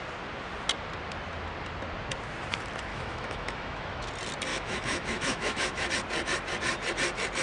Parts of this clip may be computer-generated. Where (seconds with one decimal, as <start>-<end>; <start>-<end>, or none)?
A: 2.9-4.1; 4.5-5.9